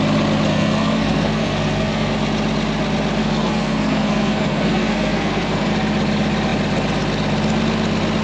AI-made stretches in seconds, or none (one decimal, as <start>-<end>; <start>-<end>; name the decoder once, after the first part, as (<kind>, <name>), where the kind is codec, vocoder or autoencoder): 0.5-2.1 (codec, SNAC); 3.2-5.7